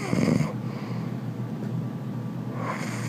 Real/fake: real